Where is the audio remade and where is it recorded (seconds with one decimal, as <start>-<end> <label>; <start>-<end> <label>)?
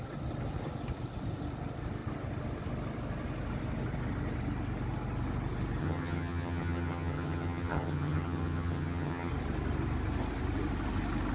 0.0-5.8 recorded; 5.8-9.3 remade; 9.3-11.3 recorded